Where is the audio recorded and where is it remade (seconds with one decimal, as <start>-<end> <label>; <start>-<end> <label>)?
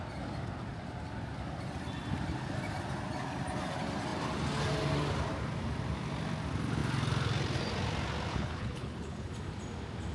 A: 0.0-8.3 recorded; 8.3-9.3 remade; 9.3-10.1 recorded